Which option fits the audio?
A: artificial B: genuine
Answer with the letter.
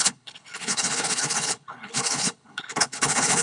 A